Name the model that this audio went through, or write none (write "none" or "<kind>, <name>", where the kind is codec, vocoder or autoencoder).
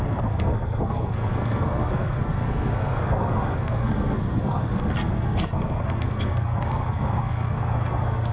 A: codec, SNAC